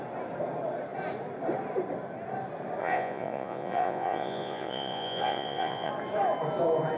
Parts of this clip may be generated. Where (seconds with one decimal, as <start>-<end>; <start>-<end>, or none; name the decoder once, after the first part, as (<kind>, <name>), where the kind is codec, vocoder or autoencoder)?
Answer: 2.8-5.9 (vocoder, Vocos)